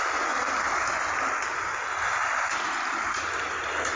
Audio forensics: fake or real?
real